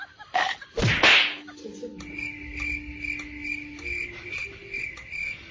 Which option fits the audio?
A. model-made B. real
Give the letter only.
B